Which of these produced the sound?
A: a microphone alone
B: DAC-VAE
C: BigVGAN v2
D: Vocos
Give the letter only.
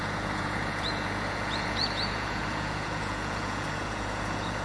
D